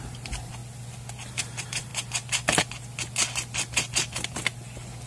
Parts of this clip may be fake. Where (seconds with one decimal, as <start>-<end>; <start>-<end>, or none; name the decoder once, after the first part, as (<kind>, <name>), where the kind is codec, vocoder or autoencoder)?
0.0-0.6 (vocoder, BigVGAN v2); 1.3-1.9